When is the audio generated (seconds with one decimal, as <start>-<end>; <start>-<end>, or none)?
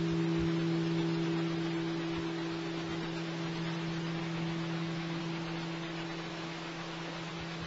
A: 4.2-5.2; 6.3-7.3